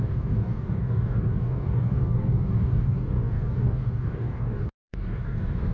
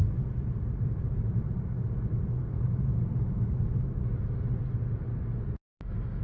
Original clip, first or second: second